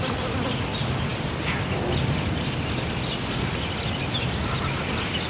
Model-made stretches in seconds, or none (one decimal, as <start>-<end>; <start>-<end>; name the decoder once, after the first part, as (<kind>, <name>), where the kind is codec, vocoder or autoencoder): none